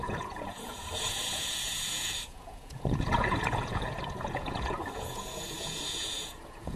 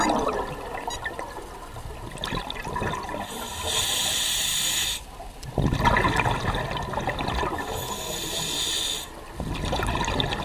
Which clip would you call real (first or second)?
second